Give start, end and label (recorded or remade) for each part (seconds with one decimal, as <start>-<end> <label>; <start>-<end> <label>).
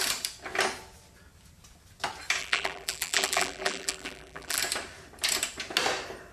0.0-2.4 recorded; 2.4-4.6 remade; 4.6-6.3 recorded